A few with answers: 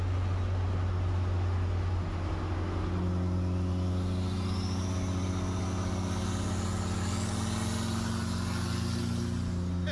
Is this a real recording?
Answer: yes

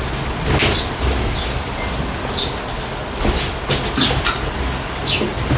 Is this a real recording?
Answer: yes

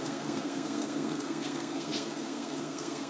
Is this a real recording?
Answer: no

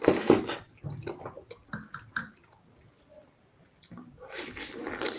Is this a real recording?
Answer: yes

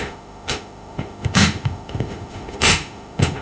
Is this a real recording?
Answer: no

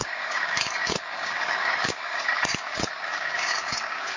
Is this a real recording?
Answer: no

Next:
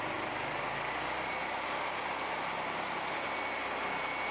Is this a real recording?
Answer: yes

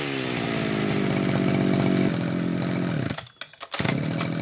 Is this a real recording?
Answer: yes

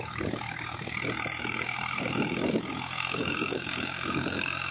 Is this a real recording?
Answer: no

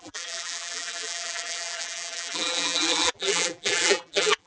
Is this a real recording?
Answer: no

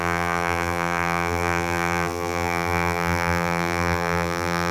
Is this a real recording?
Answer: no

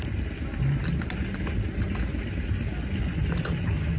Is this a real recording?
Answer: yes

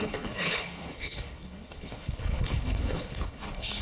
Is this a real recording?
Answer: no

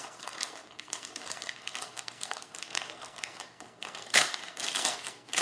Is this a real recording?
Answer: no